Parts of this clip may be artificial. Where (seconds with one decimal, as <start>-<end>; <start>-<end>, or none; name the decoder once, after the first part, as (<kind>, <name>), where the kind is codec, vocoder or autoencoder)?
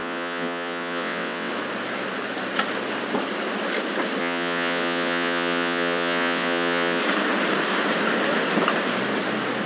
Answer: 0.0-1.5 (vocoder, WaveNeXt); 4.2-7.0